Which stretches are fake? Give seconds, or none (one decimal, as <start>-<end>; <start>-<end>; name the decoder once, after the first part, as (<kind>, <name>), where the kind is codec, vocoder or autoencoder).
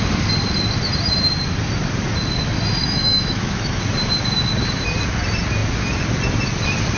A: 2.8-3.8 (autoencoder, DAC-VAE)